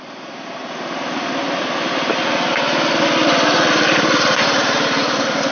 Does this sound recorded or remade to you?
recorded